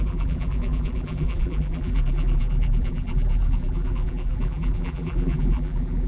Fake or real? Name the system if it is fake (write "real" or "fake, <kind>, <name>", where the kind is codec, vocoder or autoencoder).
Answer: fake, vocoder, BigVGAN v2